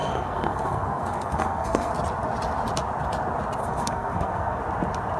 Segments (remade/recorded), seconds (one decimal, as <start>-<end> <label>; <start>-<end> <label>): 0.0-1.9 remade; 1.9-3.6 recorded; 3.6-4.6 remade; 4.6-5.2 recorded